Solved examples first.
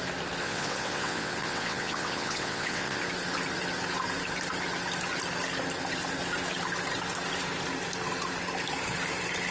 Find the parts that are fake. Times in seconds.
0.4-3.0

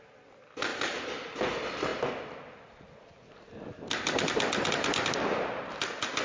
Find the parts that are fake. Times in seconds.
none

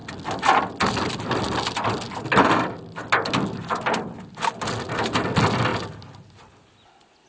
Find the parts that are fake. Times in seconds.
none

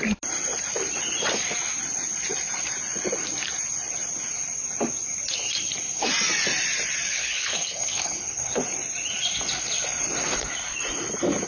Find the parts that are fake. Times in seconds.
7.1-8.6

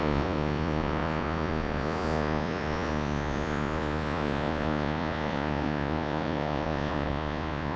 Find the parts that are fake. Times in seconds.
0.0-7.8

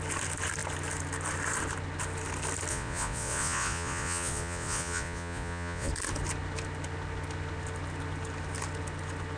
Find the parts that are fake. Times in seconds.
2.7-5.9

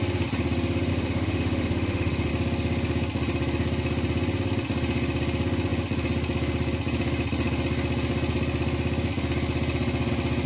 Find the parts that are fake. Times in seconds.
0.9-2.3